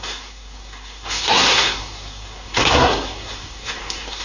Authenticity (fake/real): fake